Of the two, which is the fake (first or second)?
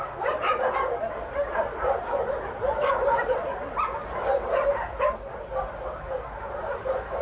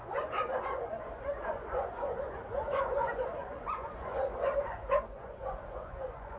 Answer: second